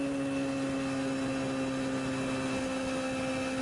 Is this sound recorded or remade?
recorded